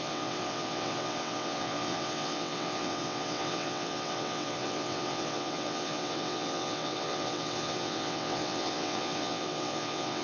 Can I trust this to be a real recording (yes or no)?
no